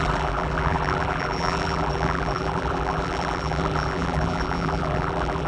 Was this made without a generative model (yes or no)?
no